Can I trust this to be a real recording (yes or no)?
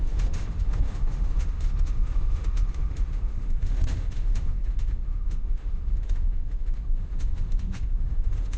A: no